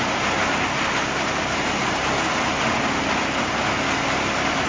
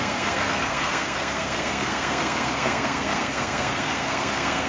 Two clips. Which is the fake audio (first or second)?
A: second